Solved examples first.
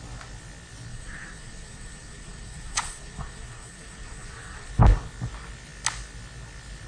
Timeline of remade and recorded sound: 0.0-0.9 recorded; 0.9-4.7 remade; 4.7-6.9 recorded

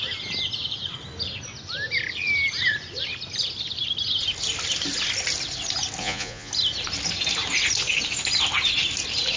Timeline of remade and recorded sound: 0.0-6.0 recorded; 6.0-6.5 remade; 6.5-9.4 recorded